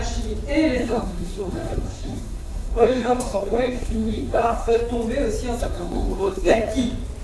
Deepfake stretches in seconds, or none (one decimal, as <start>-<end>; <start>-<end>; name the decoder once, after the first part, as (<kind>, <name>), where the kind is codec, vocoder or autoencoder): 0.8-4.8 (codec, SNAC); 5.6-6.7